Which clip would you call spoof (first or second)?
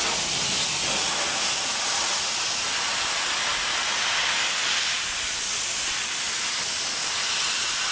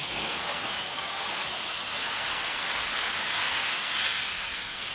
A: second